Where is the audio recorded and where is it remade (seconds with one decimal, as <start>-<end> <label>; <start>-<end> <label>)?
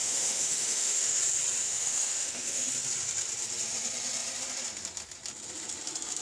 0.0-1.2 remade; 1.2-1.6 recorded; 1.6-2.7 remade; 2.7-6.2 recorded